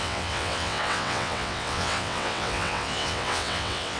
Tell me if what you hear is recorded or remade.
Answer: remade